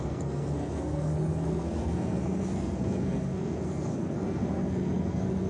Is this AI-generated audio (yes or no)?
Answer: yes